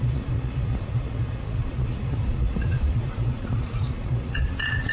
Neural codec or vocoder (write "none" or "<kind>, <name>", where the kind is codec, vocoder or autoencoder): vocoder, Vocos